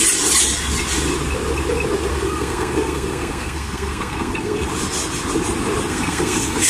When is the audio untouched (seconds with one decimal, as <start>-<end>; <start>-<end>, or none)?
0.0-2.1; 4.7-5.9